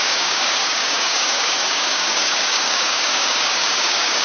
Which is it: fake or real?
fake